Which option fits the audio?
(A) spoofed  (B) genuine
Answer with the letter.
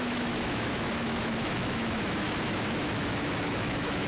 A